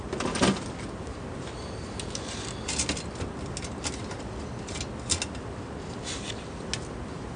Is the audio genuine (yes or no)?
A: yes